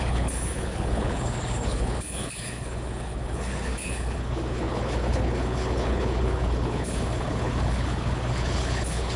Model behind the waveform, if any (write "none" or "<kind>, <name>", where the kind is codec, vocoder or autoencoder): codec, HILCodec